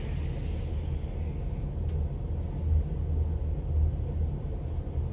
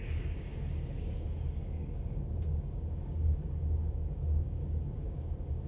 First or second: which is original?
first